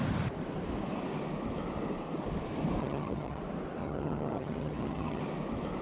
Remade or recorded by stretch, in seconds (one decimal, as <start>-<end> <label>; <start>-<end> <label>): 0.0-2.8 recorded; 2.8-3.4 remade; 3.4-3.8 recorded; 3.8-5.2 remade; 5.2-5.8 recorded